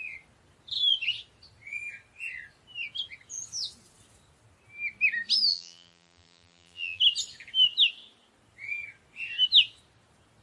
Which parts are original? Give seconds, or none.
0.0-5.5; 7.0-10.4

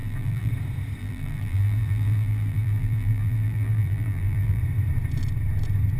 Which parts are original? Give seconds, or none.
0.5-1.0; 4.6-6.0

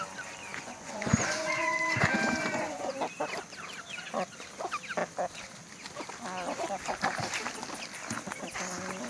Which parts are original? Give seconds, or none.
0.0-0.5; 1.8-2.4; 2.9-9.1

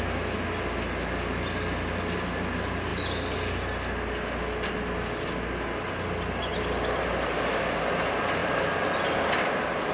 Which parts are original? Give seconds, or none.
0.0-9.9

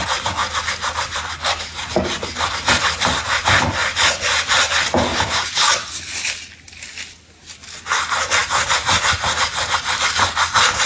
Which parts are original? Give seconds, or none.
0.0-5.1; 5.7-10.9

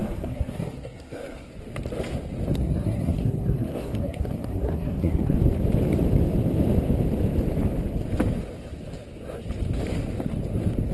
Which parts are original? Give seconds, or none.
1.5-2.5; 5.3-10.9

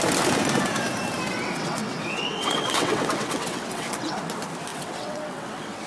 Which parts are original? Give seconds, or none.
0.0-1.4; 4.2-4.7